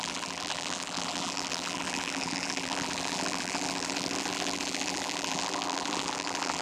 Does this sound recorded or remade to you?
remade